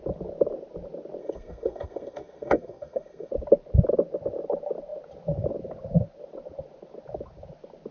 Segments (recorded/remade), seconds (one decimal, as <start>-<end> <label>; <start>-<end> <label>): 0.0-1.2 recorded; 1.2-3.3 remade; 3.3-7.9 recorded